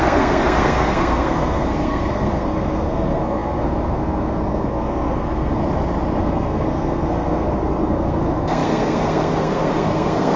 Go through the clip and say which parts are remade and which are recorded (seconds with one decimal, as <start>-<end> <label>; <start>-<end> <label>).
0.0-5.6 remade; 5.6-6.2 recorded; 6.2-10.4 remade

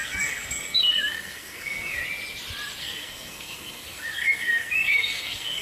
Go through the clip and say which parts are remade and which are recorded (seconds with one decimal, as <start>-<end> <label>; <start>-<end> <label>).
0.0-2.0 remade; 2.0-2.8 recorded; 2.8-5.6 remade

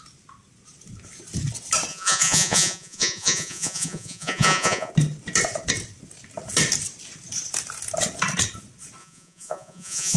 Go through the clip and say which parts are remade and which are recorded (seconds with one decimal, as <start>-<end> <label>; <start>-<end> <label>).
0.0-1.9 recorded; 1.9-4.9 remade; 4.9-9.0 recorded; 9.0-10.2 remade

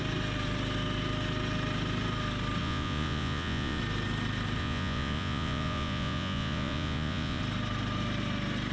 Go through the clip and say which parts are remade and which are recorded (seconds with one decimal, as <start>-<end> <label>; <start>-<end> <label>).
0.0-2.6 recorded; 2.6-3.8 remade; 3.8-4.6 recorded; 4.6-7.4 remade; 7.4-8.7 recorded

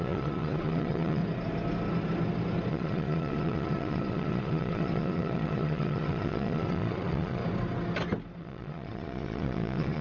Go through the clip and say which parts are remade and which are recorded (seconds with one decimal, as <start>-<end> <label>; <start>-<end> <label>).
0.0-1.2 remade; 1.2-2.7 recorded; 2.7-7.4 remade; 7.4-8.4 recorded; 8.4-10.0 remade

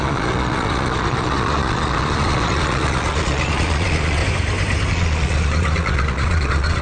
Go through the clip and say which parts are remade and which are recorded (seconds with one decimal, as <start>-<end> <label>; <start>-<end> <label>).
0.0-4.2 remade; 4.2-4.9 recorded; 4.9-6.8 remade